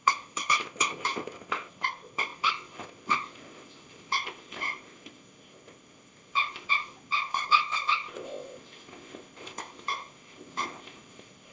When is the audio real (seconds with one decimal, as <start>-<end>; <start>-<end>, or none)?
none